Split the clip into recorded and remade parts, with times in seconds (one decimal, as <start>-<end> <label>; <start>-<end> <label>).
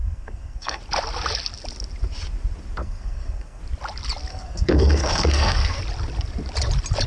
0.0-0.8 remade; 0.8-2.8 recorded; 2.8-3.6 remade; 3.6-4.3 recorded; 4.3-5.8 remade; 5.8-7.1 recorded